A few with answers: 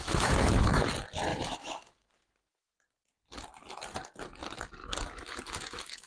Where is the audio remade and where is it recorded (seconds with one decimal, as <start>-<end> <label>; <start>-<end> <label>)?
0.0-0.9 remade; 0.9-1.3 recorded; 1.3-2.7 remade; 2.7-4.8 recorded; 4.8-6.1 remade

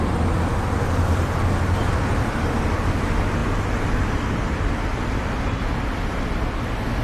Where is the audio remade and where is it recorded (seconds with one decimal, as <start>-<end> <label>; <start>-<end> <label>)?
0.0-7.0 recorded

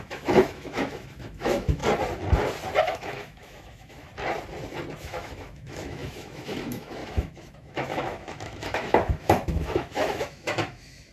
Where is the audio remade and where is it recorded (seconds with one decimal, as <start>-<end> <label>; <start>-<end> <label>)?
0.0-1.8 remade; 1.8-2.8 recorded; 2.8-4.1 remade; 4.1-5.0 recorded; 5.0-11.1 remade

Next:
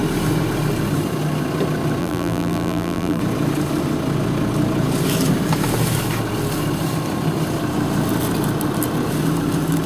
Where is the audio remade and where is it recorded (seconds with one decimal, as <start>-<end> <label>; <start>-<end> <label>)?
0.0-2.0 recorded; 2.0-3.2 remade; 3.2-9.9 recorded

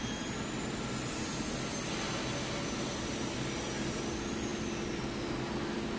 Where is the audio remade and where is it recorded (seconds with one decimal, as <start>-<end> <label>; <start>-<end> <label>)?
0.0-6.0 recorded

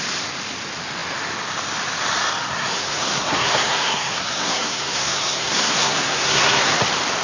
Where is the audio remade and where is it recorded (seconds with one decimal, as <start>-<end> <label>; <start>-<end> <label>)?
0.0-2.5 recorded; 2.5-6.8 remade; 6.8-7.2 recorded

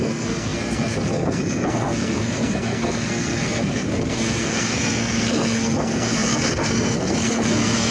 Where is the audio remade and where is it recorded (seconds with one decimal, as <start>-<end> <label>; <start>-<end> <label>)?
0.0-7.9 remade

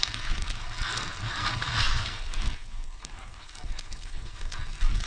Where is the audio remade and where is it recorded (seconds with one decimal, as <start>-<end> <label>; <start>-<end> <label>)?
0.0-5.1 remade